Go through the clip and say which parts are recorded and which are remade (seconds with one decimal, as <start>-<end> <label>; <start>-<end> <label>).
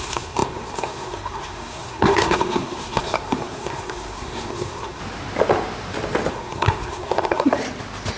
0.0-5.0 remade; 5.0-6.3 recorded; 6.3-7.6 remade; 7.6-8.2 recorded